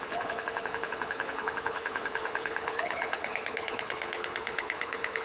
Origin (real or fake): fake